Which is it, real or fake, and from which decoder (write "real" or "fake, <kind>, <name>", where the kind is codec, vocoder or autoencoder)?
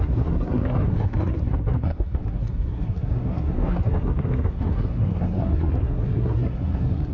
fake, codec, SNAC